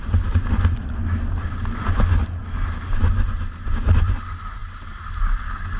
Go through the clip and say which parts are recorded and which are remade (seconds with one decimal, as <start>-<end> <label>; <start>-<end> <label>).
0.0-5.8 recorded